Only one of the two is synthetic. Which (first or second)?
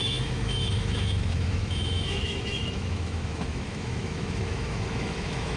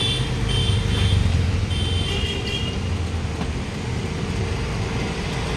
first